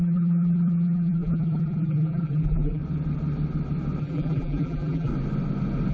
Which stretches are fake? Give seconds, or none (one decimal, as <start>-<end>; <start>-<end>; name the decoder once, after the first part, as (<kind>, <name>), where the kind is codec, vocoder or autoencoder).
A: 0.0-2.8 (vocoder, BigVGAN v2); 4.0-5.1